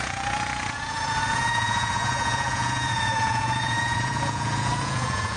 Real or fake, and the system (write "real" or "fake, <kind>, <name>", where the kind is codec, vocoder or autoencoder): fake, vocoder, Vocos